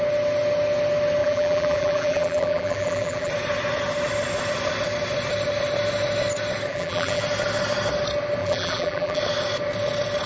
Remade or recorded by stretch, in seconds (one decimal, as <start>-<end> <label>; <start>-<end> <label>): 0.0-1.2 recorded; 1.2-3.3 remade; 3.3-6.7 recorded; 6.7-7.2 remade; 7.2-8.4 recorded; 8.4-9.2 remade; 9.2-10.3 recorded